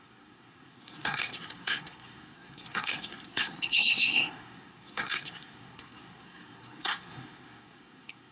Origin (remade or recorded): remade